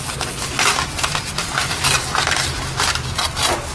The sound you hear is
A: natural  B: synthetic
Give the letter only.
A